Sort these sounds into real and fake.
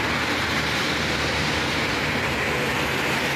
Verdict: real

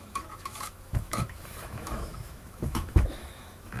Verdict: fake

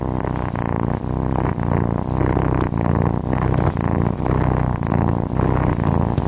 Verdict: real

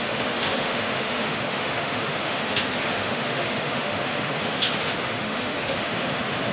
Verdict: fake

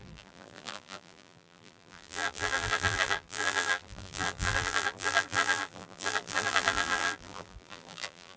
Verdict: fake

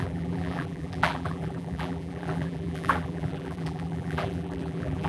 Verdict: fake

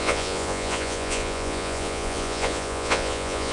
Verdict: fake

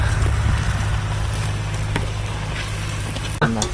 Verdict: real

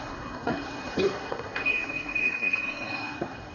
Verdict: fake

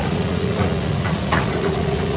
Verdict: fake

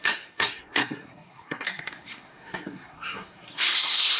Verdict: fake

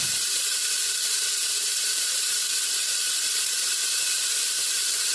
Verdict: fake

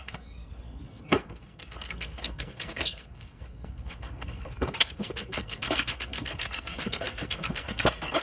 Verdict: fake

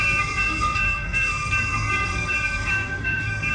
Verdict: fake